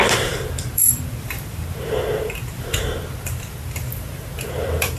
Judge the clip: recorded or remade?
remade